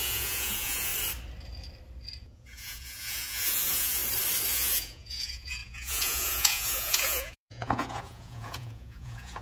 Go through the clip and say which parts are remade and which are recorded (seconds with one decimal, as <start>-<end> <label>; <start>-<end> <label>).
0.0-0.9 remade; 0.9-2.2 recorded; 2.2-4.0 remade; 4.0-4.5 recorded; 4.5-9.4 remade